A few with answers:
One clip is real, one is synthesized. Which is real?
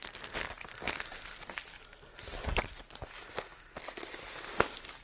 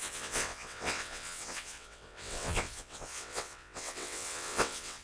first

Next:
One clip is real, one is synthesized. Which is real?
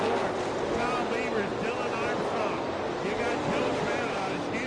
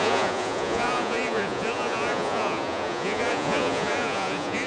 first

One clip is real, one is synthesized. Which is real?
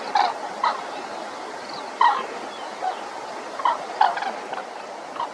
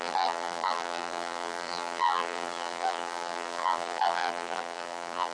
first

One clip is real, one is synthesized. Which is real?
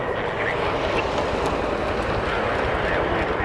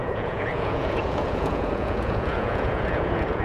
first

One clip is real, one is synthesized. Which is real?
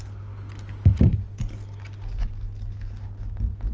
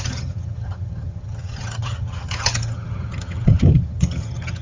first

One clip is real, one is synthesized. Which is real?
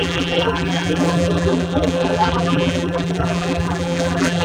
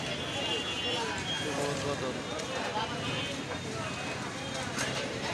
second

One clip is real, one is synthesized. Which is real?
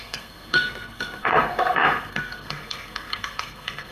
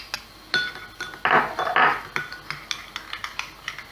second